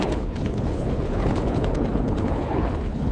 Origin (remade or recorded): remade